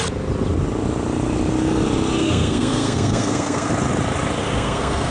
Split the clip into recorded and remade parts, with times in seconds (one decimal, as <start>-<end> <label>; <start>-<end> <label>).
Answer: 0.0-2.2 recorded; 2.2-3.7 remade; 3.7-4.4 recorded; 4.4-5.1 remade